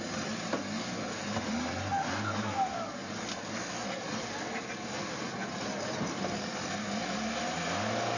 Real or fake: real